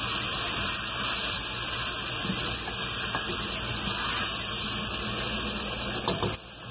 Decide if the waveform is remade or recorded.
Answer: recorded